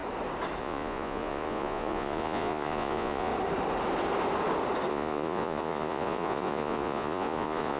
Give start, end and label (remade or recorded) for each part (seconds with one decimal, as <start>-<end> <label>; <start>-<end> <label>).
0.0-0.6 recorded; 0.6-3.3 remade; 3.3-4.9 recorded; 4.9-7.8 remade